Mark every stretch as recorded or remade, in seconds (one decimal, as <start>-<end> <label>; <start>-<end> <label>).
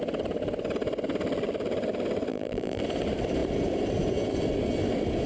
0.0-2.3 recorded; 2.3-2.8 remade; 2.8-5.3 recorded